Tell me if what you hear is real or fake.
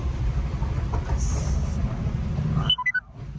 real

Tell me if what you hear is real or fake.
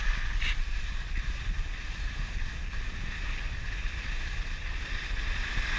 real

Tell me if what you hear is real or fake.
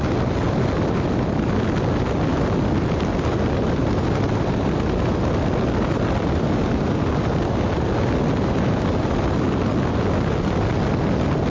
real